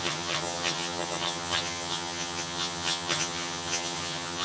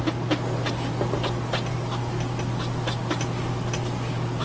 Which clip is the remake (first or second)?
first